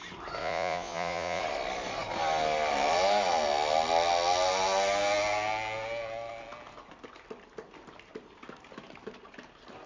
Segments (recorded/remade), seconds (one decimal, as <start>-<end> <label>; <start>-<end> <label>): 0.0-0.4 recorded; 0.4-1.4 remade; 1.4-9.9 recorded